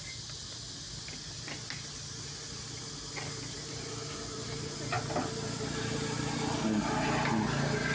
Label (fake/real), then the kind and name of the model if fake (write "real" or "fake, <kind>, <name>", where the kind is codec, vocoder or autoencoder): real